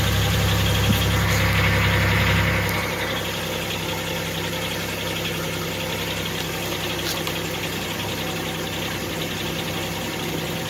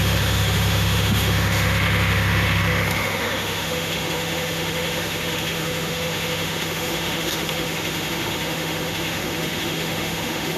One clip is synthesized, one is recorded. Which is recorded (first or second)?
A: first